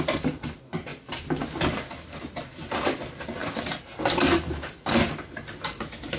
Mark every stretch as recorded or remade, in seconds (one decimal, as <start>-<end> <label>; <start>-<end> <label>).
0.0-6.2 recorded